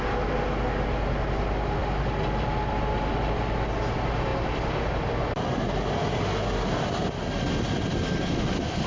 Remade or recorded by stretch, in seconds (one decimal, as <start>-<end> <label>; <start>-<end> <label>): 0.0-8.9 recorded